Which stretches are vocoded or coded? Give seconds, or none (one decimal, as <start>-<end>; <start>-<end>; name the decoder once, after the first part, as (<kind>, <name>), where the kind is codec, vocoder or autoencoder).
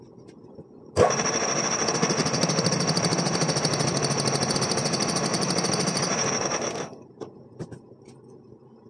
5.3-6.3 (vocoder, BigVGAN v2)